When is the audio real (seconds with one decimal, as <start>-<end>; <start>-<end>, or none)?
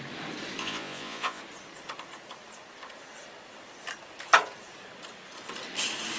0.0-0.6; 1.4-6.2